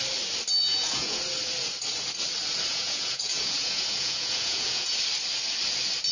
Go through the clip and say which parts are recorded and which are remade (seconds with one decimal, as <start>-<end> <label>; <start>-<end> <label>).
0.0-0.6 recorded; 0.6-1.2 remade; 1.2-2.7 recorded; 2.7-5.0 remade; 5.0-6.1 recorded